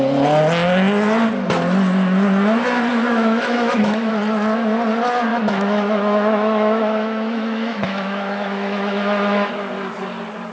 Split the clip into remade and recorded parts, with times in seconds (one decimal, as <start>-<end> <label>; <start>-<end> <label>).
0.0-2.9 recorded; 2.9-4.1 remade; 4.1-5.3 recorded; 5.3-9.5 remade; 9.5-10.5 recorded

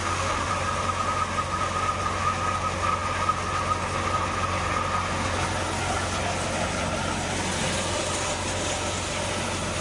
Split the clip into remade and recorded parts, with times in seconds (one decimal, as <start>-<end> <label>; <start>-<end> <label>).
0.0-0.5 remade; 0.5-9.8 recorded